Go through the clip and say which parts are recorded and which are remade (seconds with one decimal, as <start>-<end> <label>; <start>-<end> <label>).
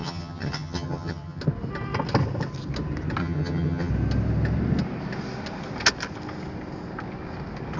0.0-1.4 remade; 1.4-3.2 recorded; 3.2-3.9 remade; 3.9-7.8 recorded